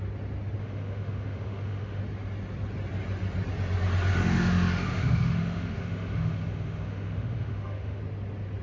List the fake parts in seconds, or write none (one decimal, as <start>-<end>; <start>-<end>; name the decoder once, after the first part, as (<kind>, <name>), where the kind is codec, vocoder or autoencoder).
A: 0.6-2.0 (autoencoder, DAC-VAE); 4.1-8.0